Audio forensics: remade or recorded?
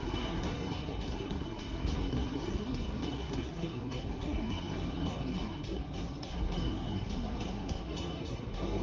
remade